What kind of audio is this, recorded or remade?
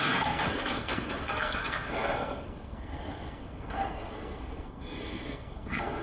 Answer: remade